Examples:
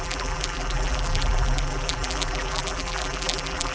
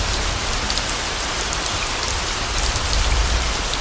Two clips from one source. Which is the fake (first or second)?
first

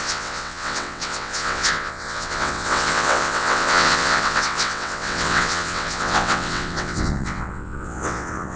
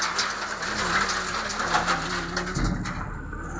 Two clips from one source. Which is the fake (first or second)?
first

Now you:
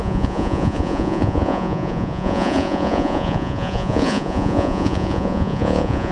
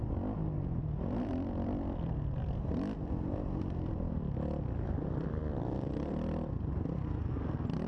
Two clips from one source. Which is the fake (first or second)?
first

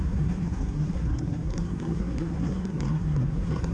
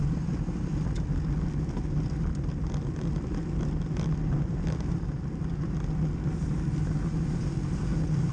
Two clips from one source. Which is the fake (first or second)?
first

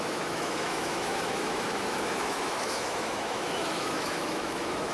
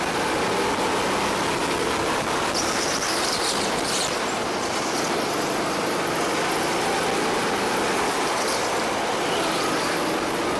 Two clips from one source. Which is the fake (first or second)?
first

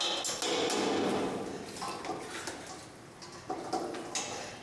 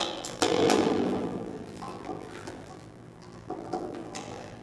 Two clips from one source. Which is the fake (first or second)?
second